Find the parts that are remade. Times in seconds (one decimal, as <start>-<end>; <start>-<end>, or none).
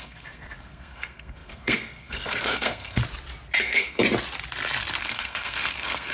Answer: 0.0-3.0; 3.6-4.0; 5.0-6.1